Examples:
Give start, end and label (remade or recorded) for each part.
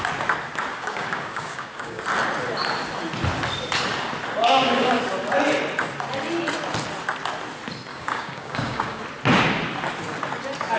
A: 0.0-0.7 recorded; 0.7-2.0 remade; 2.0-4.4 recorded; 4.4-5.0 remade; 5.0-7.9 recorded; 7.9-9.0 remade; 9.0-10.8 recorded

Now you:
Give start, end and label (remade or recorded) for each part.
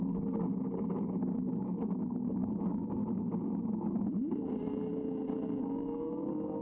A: 0.0-3.0 remade; 3.0-5.6 recorded; 5.6-6.6 remade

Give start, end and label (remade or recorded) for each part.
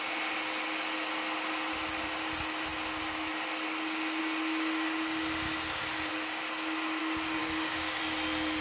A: 0.0-7.4 recorded; 7.4-8.0 remade; 8.0-8.6 recorded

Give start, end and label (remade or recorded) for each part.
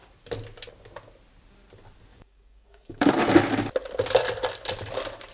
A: 0.0-2.1 recorded; 2.1-3.1 remade; 3.1-5.3 recorded